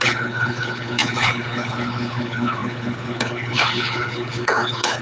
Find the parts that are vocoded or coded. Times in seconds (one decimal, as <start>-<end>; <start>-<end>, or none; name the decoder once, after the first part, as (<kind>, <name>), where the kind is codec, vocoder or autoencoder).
0.0-5.0 (codec, HILCodec)